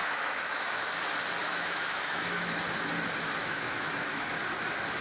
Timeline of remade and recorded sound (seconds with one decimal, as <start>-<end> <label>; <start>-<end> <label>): 0.0-0.9 remade; 0.9-1.4 recorded; 1.4-2.5 remade; 2.5-3.4 recorded; 3.4-4.4 remade; 4.4-5.0 recorded